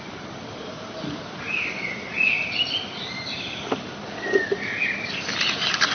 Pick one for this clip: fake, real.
fake